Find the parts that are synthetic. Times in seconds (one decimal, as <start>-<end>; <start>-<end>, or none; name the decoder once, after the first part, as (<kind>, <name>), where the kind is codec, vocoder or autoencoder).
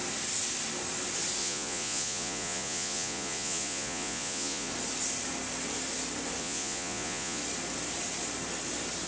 1.4-4.7 (vocoder, Vocos); 6.4-7.4